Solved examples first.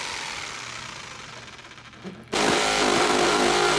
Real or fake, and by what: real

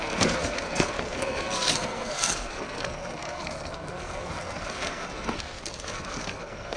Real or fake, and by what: fake, codec, SNAC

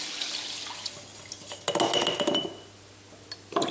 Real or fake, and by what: real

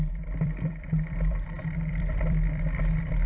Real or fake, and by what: fake, vocoder, BigVGAN v2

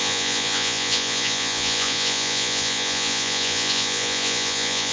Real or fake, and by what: fake, vocoder, Vocos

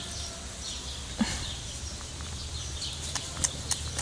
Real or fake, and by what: real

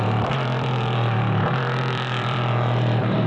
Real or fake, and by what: fake, vocoder, BigVGAN v2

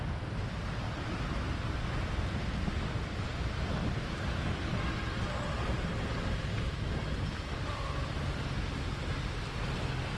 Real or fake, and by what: real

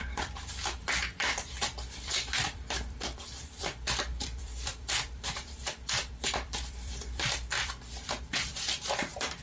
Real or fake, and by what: fake, vocoder, BigVGAN v2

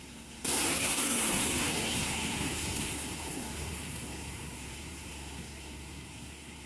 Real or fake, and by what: fake, codec, SNAC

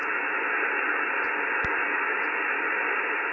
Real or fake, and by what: real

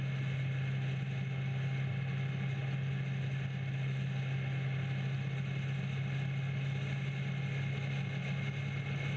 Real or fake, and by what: real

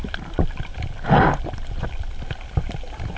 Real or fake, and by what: real